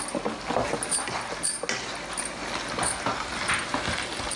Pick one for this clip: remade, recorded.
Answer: recorded